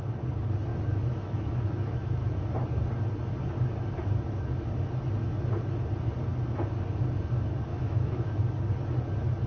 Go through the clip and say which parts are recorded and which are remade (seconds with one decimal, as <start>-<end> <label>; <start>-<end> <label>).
0.0-0.7 recorded; 0.7-2.4 remade; 2.4-7.7 recorded; 7.7-8.4 remade; 8.4-9.5 recorded